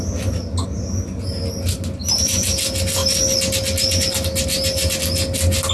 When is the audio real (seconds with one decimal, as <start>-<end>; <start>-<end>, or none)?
0.0-5.7